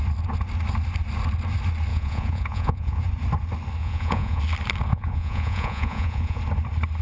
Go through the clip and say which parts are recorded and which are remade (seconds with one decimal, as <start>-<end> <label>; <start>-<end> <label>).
0.0-1.9 recorded; 1.9-3.0 remade; 3.0-3.8 recorded; 3.8-4.4 remade; 4.4-4.9 recorded; 4.9-6.4 remade; 6.4-7.0 recorded